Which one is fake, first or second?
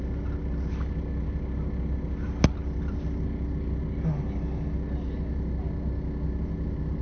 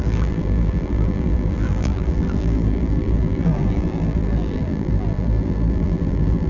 second